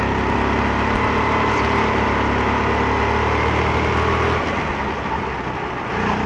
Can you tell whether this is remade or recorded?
recorded